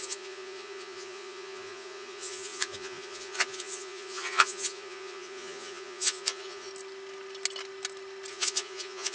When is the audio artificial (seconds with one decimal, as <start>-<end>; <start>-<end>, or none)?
0.0-6.7; 8.3-9.1